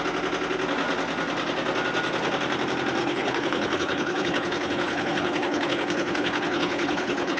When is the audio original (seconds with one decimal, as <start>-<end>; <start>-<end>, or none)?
0.0-3.0